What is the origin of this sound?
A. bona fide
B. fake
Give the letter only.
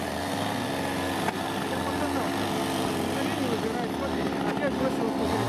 A